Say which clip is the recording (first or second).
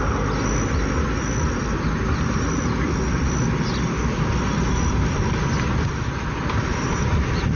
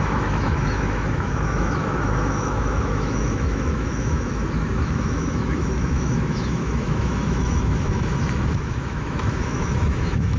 first